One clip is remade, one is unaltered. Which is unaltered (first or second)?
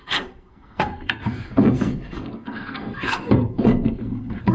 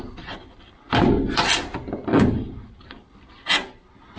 second